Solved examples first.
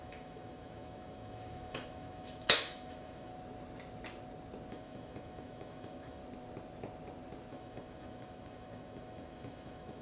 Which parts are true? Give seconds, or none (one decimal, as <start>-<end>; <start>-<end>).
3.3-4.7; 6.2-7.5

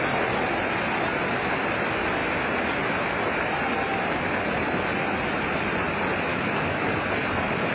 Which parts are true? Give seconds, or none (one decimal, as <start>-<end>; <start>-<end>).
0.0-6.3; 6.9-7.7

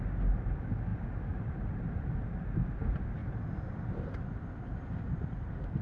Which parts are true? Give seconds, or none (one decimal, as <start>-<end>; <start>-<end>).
0.0-0.9; 1.9-3.2; 4.2-5.8